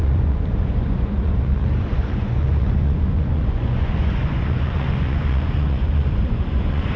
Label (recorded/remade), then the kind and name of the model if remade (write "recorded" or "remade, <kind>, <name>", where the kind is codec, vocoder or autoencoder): remade, vocoder, Vocos